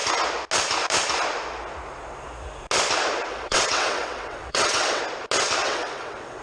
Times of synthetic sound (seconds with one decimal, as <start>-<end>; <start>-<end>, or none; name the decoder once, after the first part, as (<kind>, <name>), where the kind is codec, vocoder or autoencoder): 3.3-5.0 (vocoder, WaveNeXt); 5.6-6.4